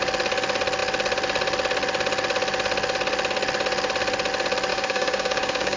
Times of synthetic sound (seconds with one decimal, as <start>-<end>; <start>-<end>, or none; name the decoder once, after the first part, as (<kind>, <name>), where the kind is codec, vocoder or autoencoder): 4.7-5.8 (codec, DAC)